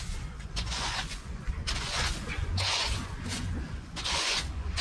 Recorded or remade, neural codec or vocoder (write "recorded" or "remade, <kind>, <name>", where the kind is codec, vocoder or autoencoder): remade, vocoder, Vocos